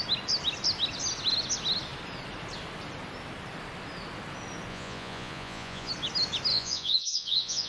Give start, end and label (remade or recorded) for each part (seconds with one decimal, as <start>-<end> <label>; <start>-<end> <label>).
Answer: 0.0-4.7 recorded; 4.7-5.9 remade; 5.9-6.5 recorded; 6.5-7.7 remade

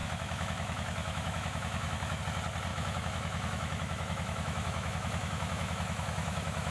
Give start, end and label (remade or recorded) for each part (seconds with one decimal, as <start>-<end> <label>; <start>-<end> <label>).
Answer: 0.0-2.2 remade; 2.2-2.7 recorded; 2.7-6.7 remade

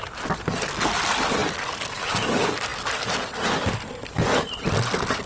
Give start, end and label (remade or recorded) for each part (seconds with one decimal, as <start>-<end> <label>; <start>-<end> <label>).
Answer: 0.0-5.3 recorded

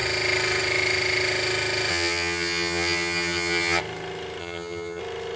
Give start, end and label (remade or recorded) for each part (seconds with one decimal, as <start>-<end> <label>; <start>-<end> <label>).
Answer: 0.0-1.9 recorded; 1.9-3.8 remade; 3.8-4.4 recorded; 4.4-5.0 remade; 5.0-5.4 recorded

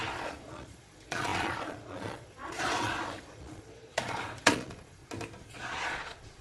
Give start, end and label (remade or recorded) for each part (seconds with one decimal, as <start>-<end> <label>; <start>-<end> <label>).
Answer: 0.0-5.0 remade; 5.0-5.5 recorded; 5.5-6.4 remade

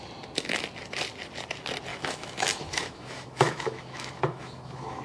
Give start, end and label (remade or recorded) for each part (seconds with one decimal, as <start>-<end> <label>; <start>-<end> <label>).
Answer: 0.0-1.9 recorded; 1.9-5.0 remade

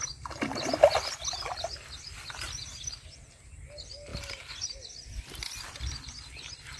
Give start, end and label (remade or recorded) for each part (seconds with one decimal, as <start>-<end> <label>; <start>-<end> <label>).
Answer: 0.0-6.8 recorded